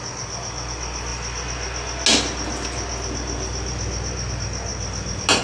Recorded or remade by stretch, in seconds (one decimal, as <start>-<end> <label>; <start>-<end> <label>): 0.0-5.4 recorded